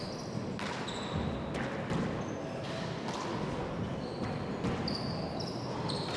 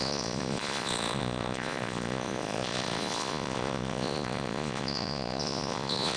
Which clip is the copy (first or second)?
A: second